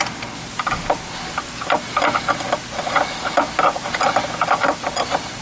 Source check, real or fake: real